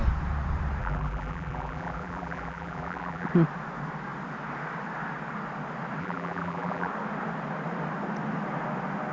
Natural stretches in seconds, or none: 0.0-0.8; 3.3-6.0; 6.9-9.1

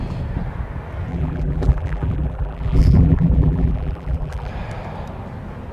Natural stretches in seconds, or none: 0.0-1.1; 4.5-5.7

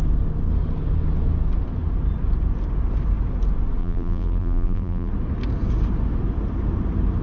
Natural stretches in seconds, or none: 0.0-3.8; 5.1-7.2

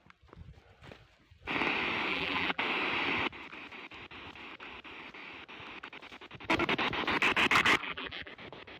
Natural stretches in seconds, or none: 0.0-2.1; 2.6-7.8; 8.3-8.8